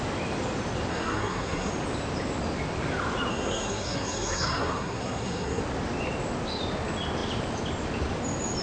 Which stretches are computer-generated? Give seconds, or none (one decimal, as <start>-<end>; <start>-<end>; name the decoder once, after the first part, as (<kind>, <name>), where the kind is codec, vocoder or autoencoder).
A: 0.9-1.7 (codec, SNAC); 3.3-5.6